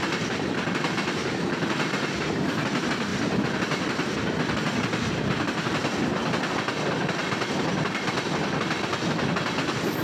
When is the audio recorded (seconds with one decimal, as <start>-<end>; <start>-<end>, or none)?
none